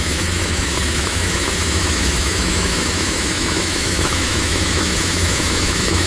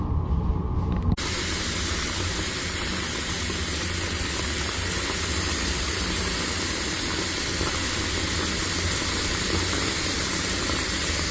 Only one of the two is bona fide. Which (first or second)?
second